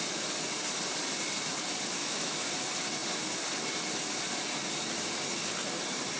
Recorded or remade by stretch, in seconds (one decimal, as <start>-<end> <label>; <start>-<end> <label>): 0.0-2.0 recorded; 2.0-2.5 remade; 2.5-6.2 recorded